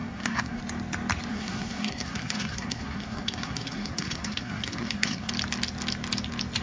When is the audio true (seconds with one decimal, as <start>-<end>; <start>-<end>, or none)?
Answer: 0.6-1.3; 5.3-6.6